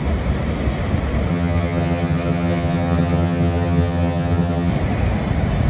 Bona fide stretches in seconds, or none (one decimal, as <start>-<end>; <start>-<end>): 0.0-1.3; 4.7-5.7

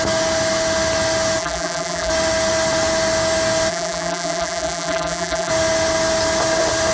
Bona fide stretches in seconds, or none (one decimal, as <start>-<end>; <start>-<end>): 0.0-1.4; 2.1-3.7; 5.5-6.9

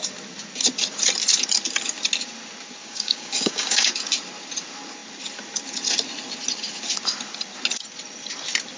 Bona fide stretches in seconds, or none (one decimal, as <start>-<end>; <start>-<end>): 0.0-2.8; 3.9-8.8

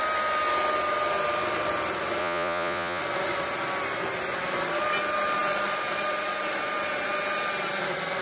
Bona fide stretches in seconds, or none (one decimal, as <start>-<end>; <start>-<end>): 0.0-2.2; 3.0-8.2

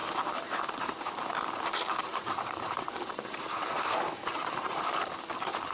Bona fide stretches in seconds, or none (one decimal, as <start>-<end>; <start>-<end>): 0.0-2.1; 5.1-5.7

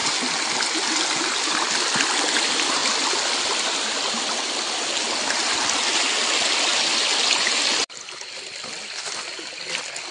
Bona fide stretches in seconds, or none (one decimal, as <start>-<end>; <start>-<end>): 0.0-10.1

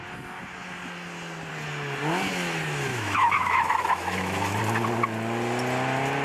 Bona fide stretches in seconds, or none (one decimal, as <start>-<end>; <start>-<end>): 0.0-2.9; 4.6-6.2

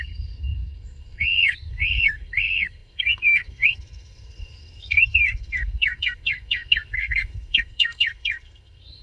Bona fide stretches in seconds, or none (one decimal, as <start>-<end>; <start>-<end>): none